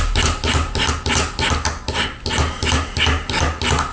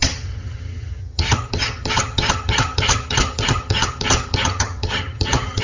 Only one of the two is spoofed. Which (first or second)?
second